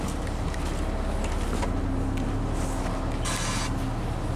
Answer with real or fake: real